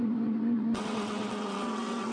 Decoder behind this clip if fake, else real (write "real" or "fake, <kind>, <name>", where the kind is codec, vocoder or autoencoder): fake, vocoder, WaveNeXt